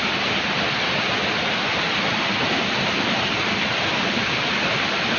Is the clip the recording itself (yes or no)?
yes